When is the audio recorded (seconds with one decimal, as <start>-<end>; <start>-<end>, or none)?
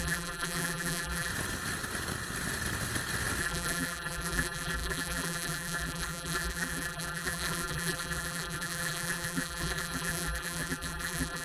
1.3-3.4